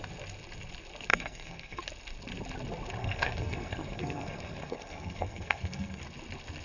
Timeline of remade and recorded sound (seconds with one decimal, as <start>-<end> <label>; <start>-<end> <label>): 0.0-1.1 recorded; 1.1-1.8 remade; 1.8-3.0 recorded; 3.0-6.0 remade; 6.0-6.6 recorded